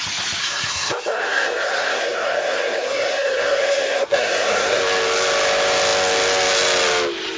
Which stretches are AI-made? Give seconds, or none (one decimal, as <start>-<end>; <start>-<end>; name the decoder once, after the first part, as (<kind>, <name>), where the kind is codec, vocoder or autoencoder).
0.4-4.8 (codec, SNAC)